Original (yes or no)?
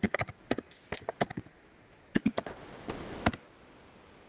yes